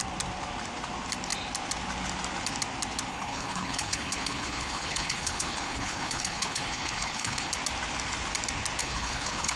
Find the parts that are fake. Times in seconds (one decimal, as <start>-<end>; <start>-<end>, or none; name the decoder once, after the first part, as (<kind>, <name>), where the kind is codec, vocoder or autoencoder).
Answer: 3.1-7.5 (codec, HILCodec); 8.8-9.6